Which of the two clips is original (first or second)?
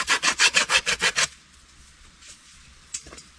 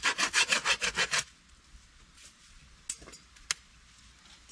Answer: second